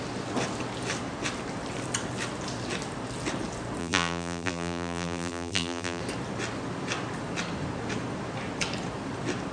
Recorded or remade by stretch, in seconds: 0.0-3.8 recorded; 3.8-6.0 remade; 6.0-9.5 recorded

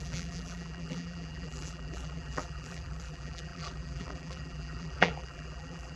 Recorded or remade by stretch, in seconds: 0.0-6.0 remade

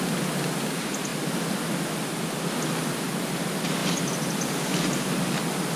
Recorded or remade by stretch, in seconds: 0.0-5.8 recorded

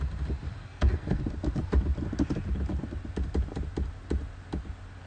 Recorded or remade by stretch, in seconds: 0.0-0.6 recorded; 0.6-1.2 remade; 1.2-5.1 recorded

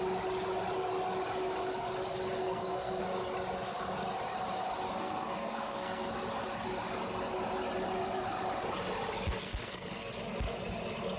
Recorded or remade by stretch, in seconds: 0.0-2.4 recorded; 2.4-3.0 remade; 3.0-5.0 recorded; 5.0-6.1 remade; 6.1-9.4 recorded; 9.4-10.1 remade; 10.1-11.2 recorded

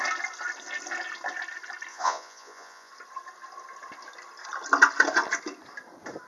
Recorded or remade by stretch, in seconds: 0.0-1.9 recorded; 1.9-2.9 remade; 2.9-6.3 recorded